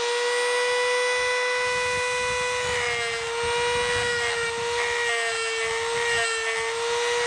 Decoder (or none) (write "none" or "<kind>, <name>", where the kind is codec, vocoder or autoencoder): none